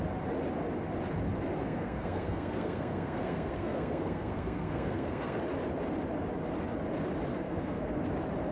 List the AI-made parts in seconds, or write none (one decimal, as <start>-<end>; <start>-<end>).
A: 1.6-5.4; 7.3-7.9